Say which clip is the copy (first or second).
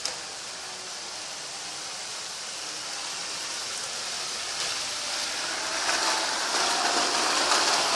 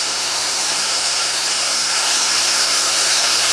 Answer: second